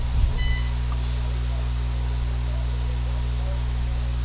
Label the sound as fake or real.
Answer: real